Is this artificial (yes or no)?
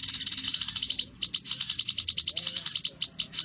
no